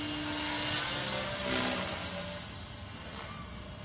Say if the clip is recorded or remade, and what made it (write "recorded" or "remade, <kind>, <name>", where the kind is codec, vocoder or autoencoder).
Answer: recorded